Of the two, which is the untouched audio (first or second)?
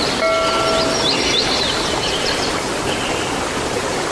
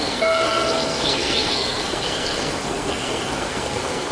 first